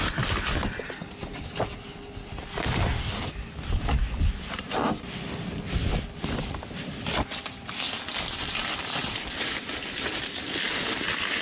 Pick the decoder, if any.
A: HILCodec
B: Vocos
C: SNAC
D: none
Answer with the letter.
D